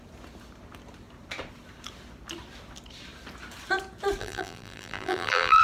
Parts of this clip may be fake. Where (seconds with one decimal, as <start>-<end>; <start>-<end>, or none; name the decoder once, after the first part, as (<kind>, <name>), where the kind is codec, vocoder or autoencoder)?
4.2-5.6 (vocoder, BigVGAN v2)